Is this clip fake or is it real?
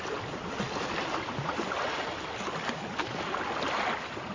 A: real